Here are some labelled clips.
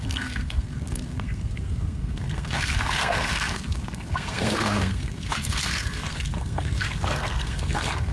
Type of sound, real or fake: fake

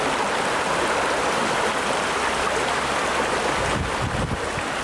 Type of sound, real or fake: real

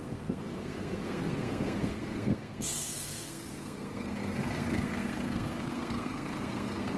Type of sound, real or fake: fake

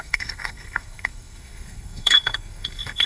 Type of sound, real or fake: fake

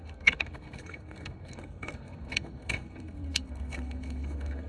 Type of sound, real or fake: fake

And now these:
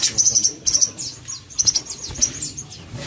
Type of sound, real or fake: real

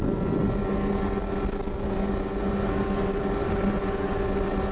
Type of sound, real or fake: real